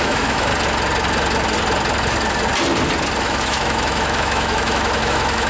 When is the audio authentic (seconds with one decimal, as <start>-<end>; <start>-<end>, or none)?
0.5-3.2